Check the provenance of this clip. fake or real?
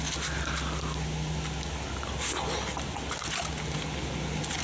real